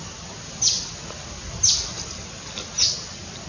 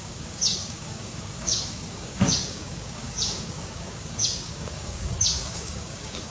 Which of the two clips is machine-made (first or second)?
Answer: second